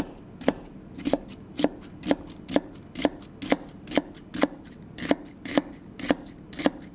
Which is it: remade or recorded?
recorded